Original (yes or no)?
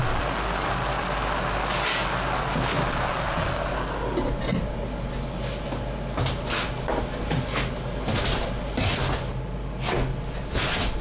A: yes